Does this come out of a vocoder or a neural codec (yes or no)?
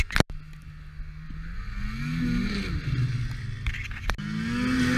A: no